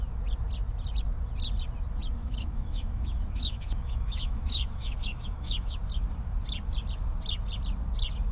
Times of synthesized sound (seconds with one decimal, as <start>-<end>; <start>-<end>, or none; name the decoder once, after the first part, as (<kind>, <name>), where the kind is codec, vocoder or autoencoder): 2.1-5.8 (autoencoder, DAC-VAE)